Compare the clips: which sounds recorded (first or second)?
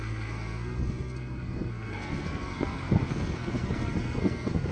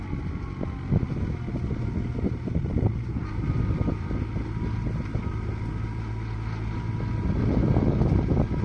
second